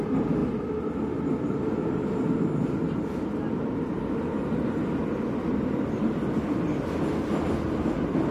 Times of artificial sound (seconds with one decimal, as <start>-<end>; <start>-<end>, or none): none